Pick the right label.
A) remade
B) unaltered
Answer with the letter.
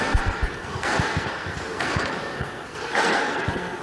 A